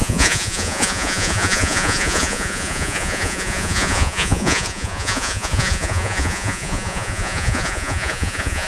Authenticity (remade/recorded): remade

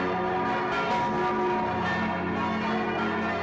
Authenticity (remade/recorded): recorded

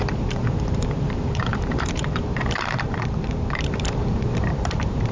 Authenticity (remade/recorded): remade